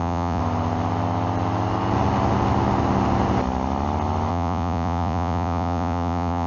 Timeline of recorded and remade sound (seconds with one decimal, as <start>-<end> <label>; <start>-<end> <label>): 0.0-0.4 remade; 0.4-4.3 recorded; 4.3-6.5 remade